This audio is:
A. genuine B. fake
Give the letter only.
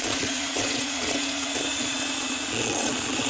B